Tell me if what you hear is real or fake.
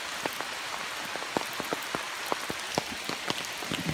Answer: real